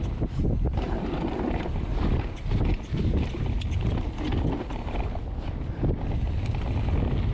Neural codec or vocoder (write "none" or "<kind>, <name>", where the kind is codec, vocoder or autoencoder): none